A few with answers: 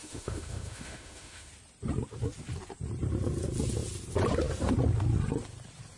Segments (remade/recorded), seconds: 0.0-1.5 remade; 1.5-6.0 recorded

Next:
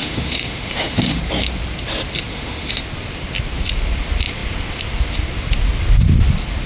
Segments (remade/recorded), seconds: 0.0-1.2 remade; 1.2-2.3 recorded; 2.3-2.8 remade; 2.8-6.7 recorded

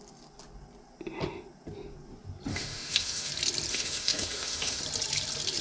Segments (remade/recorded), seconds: 0.0-2.5 recorded; 2.5-3.3 remade; 3.3-3.7 recorded; 3.7-4.8 remade; 4.8-5.6 recorded